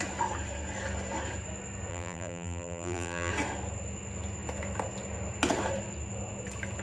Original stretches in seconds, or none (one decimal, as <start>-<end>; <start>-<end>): 0.0-1.9; 3.3-6.8